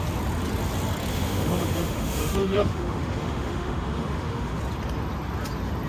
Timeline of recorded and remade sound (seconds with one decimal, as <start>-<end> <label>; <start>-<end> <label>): 0.0-1.1 recorded; 1.1-4.6 remade; 4.6-5.9 recorded